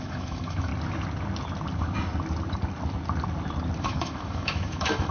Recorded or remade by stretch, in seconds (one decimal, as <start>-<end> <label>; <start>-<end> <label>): 0.0-0.7 remade; 0.7-3.8 recorded; 3.8-5.1 remade